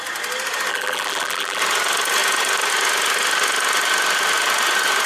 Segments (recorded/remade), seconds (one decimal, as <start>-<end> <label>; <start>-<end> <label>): 0.0-0.7 recorded; 0.7-1.6 remade; 1.6-5.1 recorded